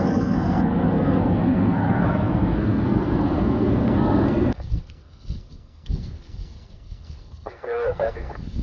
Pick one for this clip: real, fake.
fake